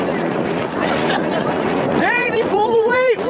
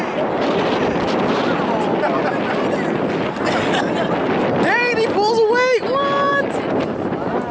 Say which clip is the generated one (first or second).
first